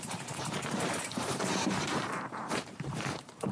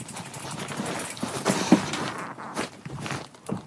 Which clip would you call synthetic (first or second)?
first